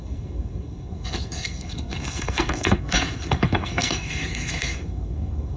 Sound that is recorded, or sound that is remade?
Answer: remade